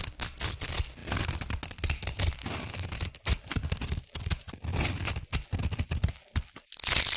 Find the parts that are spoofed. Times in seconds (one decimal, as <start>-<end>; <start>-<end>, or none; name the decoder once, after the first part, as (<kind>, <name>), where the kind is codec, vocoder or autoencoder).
none